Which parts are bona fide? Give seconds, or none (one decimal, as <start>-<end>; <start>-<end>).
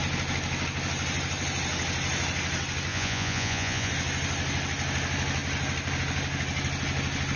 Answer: 0.0-2.9; 3.9-7.4